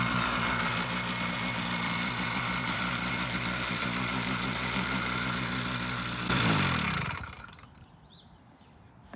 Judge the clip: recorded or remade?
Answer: remade